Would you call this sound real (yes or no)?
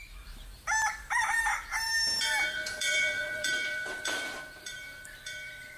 no